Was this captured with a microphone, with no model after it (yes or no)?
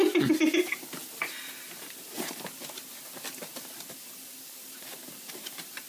yes